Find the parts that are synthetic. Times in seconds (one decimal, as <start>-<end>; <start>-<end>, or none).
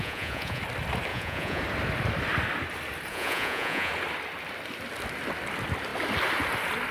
0.0-0.6; 1.1-1.6; 3.1-3.9